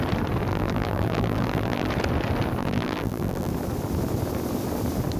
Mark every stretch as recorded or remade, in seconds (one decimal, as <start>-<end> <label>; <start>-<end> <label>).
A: 0.0-0.5 recorded; 0.5-1.9 remade; 1.9-2.6 recorded; 2.6-3.5 remade; 3.5-5.2 recorded